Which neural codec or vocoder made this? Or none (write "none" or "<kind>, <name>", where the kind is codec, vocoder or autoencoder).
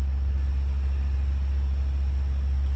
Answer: none